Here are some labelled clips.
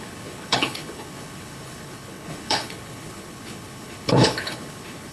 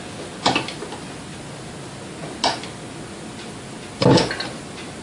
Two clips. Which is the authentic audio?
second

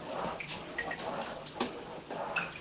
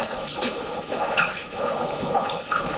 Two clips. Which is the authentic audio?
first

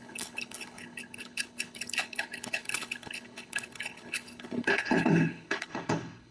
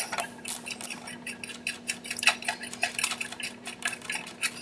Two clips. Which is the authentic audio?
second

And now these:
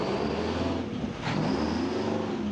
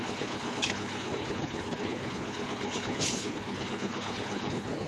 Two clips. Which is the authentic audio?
first